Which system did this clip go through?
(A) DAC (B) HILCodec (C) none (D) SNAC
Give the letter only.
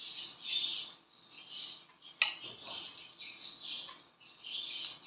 C